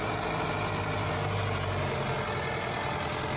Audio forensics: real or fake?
real